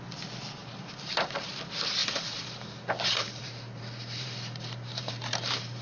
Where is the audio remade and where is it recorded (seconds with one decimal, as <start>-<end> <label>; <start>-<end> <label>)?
0.0-0.6 recorded; 0.6-1.5 remade; 1.5-2.0 recorded; 2.0-5.8 remade